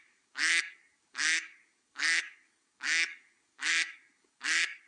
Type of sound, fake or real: fake